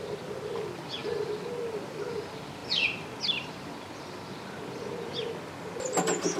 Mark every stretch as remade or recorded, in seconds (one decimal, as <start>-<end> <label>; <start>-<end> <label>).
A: 0.0-6.4 recorded